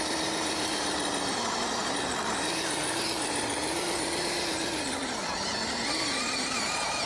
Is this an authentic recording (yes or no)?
yes